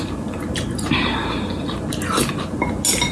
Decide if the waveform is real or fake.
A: real